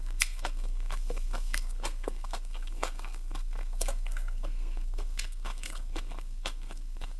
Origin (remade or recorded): remade